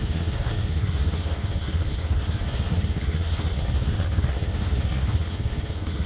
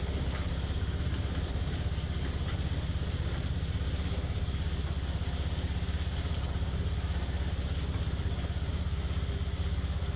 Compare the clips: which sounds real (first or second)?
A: second